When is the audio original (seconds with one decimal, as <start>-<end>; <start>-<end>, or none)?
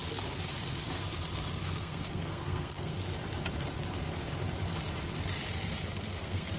0.0-1.6; 3.0-5.9